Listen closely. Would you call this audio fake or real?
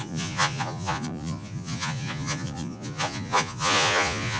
fake